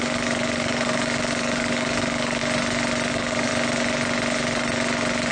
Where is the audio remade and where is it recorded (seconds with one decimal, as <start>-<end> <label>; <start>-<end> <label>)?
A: 0.0-2.4 remade; 2.4-3.1 recorded; 3.1-3.5 remade; 3.5-5.3 recorded